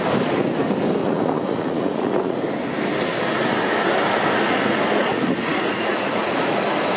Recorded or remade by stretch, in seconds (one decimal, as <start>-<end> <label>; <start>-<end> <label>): 0.0-1.0 recorded; 1.0-2.4 remade; 2.4-5.0 recorded; 5.0-6.6 remade; 6.6-7.0 recorded